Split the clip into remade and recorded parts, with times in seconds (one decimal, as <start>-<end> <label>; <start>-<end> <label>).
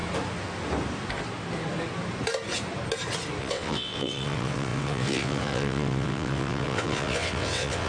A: 0.0-3.4 recorded; 3.4-7.9 remade